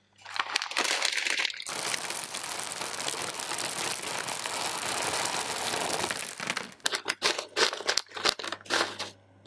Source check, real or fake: real